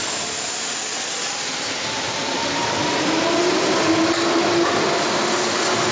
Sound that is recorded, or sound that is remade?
recorded